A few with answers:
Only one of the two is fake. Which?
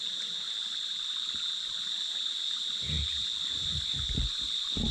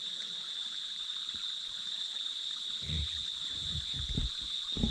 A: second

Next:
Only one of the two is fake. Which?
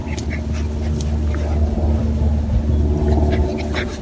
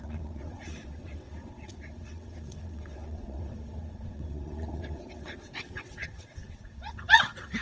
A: second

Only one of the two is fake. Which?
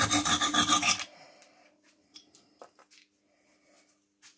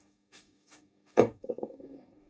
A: second